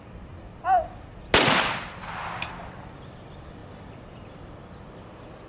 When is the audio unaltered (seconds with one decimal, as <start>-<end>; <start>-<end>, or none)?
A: 0.0-5.5